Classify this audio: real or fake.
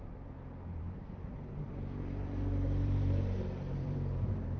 fake